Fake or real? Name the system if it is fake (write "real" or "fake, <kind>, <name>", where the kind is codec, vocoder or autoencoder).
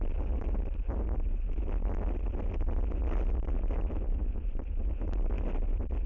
real